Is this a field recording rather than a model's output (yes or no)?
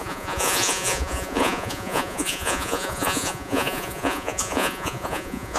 no